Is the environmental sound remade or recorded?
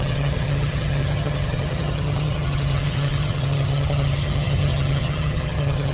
remade